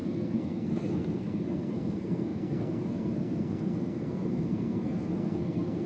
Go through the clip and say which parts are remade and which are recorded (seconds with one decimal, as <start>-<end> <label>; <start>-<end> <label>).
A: 0.0-5.9 remade